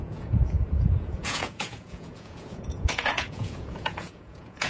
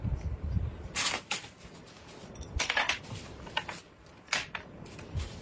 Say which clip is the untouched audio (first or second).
second